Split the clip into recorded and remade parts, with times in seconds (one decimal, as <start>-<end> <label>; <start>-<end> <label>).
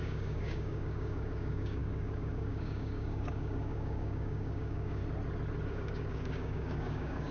0.0-5.0 remade; 5.0-5.7 recorded; 5.7-7.3 remade